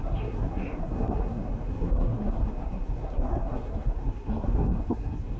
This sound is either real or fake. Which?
fake